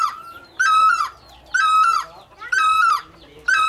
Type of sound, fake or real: real